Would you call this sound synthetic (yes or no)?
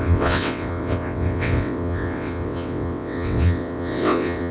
yes